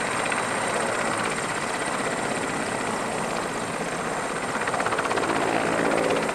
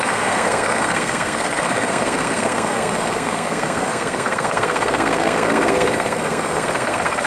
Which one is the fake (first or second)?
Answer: second